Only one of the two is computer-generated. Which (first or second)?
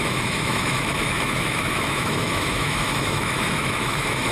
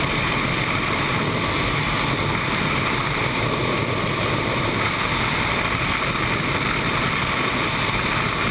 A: first